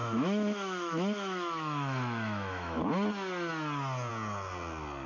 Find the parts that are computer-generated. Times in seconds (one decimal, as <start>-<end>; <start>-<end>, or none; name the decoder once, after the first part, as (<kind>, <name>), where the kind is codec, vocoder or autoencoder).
0.0-2.9 (autoencoder, DAC-VAE)